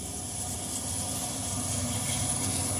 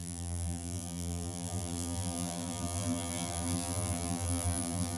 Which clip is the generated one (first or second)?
second